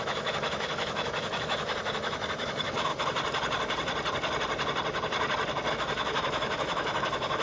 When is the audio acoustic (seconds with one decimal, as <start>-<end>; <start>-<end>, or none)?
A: 2.9-5.7